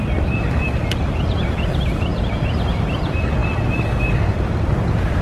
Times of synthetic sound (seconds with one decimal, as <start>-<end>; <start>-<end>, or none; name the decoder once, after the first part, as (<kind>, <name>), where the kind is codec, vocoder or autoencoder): none